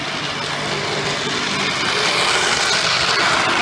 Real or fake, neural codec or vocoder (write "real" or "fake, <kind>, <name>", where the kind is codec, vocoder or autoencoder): real